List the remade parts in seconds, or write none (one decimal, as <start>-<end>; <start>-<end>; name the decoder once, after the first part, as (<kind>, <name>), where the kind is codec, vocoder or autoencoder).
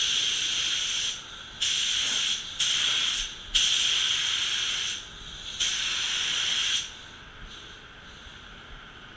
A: none